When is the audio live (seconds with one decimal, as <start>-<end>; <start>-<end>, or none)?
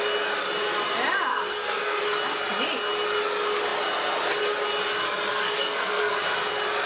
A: 0.0-1.3; 2.0-5.3; 6.1-6.9